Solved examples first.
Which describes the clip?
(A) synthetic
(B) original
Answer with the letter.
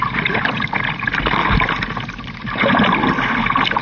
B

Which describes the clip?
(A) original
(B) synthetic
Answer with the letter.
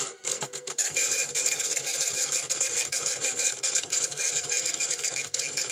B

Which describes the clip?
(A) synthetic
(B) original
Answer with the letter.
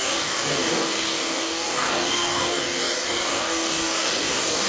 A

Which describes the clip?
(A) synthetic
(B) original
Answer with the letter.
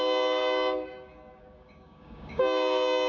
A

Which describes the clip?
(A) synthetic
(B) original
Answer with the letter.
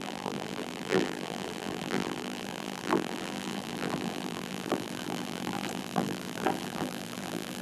A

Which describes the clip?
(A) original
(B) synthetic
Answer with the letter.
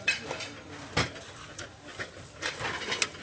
A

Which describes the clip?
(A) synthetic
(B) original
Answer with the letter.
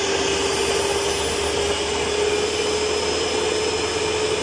B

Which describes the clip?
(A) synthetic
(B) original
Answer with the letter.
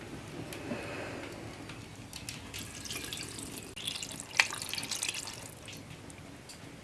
B